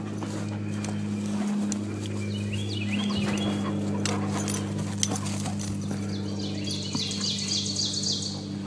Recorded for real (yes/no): yes